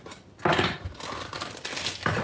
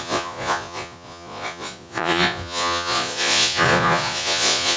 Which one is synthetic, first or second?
second